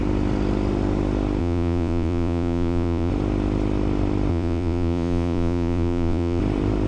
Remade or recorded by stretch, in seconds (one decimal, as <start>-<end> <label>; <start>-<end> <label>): 0.0-1.4 recorded; 1.4-3.1 remade; 3.1-4.3 recorded; 4.3-6.4 remade; 6.4-6.9 recorded